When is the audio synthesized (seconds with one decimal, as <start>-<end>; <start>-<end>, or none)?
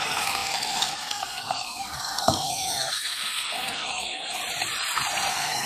0.0-4.4; 5.3-5.7